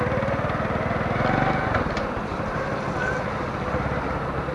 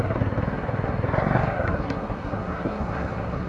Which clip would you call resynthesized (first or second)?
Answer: second